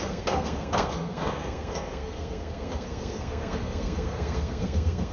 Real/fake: fake